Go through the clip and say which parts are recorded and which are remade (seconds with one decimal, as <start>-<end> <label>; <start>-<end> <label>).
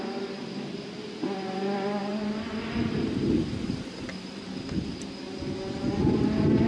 0.0-6.7 recorded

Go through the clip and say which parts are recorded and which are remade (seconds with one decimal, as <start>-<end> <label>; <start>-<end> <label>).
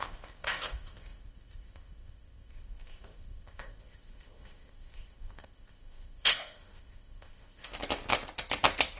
0.0-7.7 remade; 7.7-9.0 recorded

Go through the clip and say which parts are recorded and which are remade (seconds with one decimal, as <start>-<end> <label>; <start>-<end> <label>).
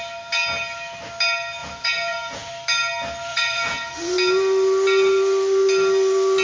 0.0-1.6 recorded; 1.6-2.5 remade; 2.5-3.3 recorded; 3.3-3.9 remade; 3.9-6.4 recorded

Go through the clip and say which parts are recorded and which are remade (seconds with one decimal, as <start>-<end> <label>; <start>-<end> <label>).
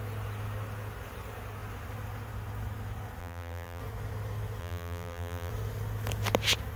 0.0-3.2 recorded; 3.2-3.8 remade; 3.8-4.6 recorded; 4.6-5.5 remade; 5.5-6.8 recorded